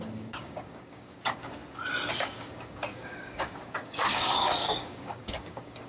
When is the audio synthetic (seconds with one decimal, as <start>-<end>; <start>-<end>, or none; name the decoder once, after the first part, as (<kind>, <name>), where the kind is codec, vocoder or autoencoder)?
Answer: 0.0-1.6 (codec, DAC); 2.1-5.9